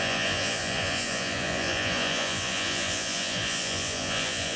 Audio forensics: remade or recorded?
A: remade